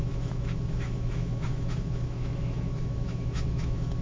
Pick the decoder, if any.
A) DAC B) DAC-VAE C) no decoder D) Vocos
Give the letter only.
B